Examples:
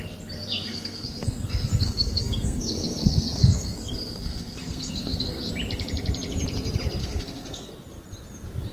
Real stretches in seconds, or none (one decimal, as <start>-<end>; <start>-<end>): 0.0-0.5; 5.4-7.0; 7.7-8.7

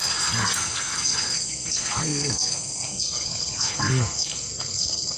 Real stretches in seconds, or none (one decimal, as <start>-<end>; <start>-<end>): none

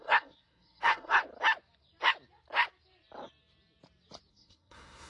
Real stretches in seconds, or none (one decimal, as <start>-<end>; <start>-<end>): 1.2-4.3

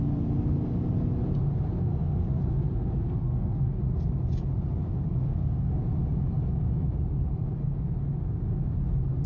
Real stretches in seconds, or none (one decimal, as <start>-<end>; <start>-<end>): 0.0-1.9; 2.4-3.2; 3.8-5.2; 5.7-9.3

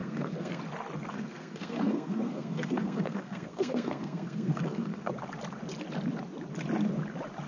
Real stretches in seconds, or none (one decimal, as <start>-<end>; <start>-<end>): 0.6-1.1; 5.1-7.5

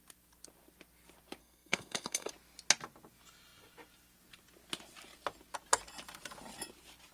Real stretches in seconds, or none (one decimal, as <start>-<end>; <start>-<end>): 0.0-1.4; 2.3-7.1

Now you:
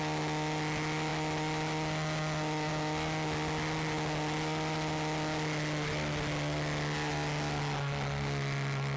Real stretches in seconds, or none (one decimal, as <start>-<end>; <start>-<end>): 0.0-9.0